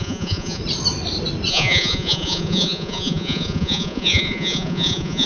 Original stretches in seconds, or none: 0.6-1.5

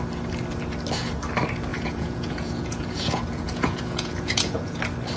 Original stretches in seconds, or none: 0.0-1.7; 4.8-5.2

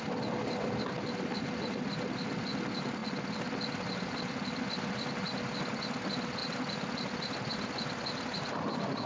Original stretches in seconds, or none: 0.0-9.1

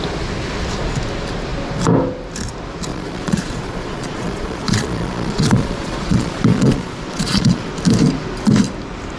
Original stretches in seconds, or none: 0.0-2.9; 7.7-9.2